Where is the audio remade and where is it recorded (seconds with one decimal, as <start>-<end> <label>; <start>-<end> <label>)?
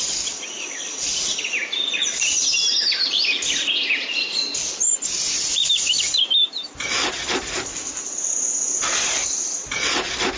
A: 0.0-6.4 recorded; 6.4-7.5 remade; 7.5-10.4 recorded